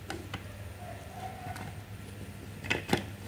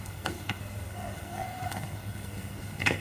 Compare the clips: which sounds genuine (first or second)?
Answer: first